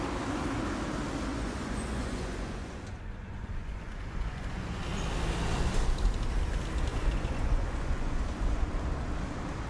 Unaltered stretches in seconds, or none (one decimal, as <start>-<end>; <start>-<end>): 0.0-1.3; 4.8-6.9; 8.7-9.7